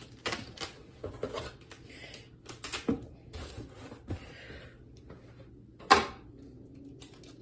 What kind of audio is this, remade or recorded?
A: recorded